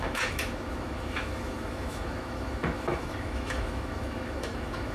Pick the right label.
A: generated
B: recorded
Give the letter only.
A